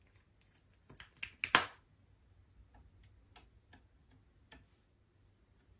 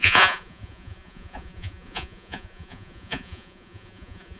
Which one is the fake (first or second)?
second